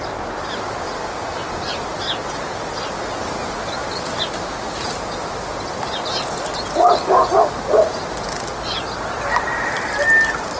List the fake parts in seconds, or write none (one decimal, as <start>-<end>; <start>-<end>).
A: none